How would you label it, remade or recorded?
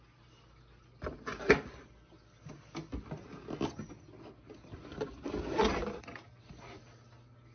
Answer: recorded